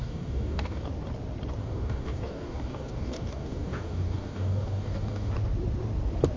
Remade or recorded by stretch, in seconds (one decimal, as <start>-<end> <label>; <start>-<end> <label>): 0.0-0.9 remade; 0.9-1.6 recorded; 1.6-5.3 remade; 5.3-6.4 recorded